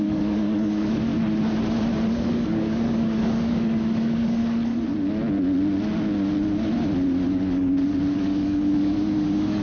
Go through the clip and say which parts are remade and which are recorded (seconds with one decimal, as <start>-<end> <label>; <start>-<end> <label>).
0.0-1.1 remade; 1.1-2.1 recorded; 2.1-4.4 remade; 4.4-8.1 recorded; 8.1-9.6 remade